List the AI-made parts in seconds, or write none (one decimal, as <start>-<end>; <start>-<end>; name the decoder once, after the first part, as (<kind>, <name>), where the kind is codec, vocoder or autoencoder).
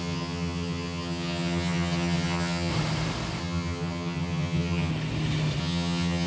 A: 0.0-2.7 (vocoder, HiFi-GAN); 3.4-4.9; 5.6-6.3